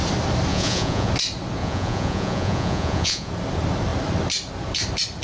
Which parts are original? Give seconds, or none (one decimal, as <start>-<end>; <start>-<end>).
0.0-0.5; 1.1-1.6; 3.3-5.2